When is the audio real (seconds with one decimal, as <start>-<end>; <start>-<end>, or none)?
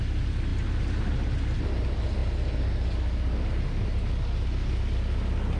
0.0-5.6